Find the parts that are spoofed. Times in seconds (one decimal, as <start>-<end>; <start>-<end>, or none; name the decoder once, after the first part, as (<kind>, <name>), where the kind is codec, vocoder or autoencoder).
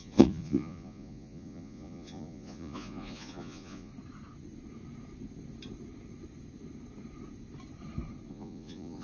0.0-3.9 (vocoder, Vocos); 8.3-9.0